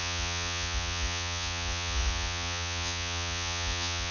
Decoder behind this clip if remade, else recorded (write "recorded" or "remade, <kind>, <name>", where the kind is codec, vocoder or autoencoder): remade, vocoder, Vocos